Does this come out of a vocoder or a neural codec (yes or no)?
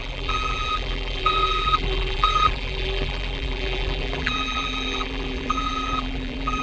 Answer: yes